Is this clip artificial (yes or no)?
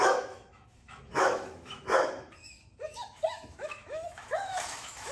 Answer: yes